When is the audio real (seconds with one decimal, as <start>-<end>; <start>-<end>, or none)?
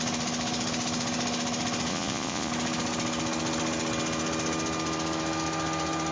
0.0-1.9; 2.5-6.1